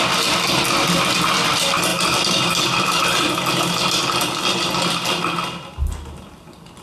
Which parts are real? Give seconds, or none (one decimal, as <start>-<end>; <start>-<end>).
0.0-6.8